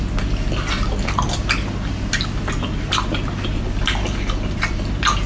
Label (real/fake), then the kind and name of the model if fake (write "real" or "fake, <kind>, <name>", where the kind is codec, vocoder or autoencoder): real